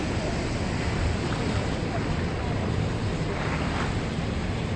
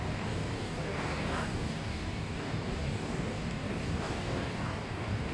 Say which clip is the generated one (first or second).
second